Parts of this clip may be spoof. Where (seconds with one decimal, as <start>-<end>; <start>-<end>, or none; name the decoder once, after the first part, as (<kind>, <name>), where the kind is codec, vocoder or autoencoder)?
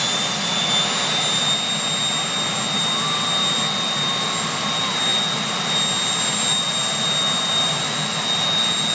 none